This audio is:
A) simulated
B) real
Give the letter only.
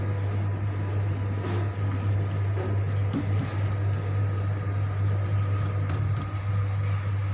B